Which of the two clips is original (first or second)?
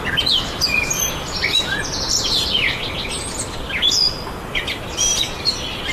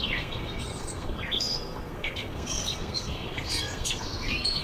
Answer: first